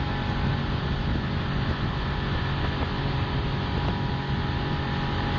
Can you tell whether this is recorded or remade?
recorded